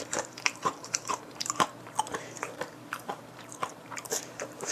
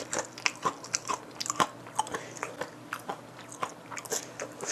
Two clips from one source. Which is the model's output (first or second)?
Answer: first